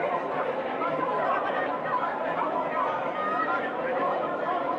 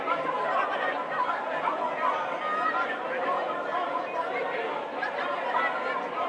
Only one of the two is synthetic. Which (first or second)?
first